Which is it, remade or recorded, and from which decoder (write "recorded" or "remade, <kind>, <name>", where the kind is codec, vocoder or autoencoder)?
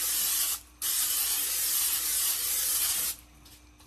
recorded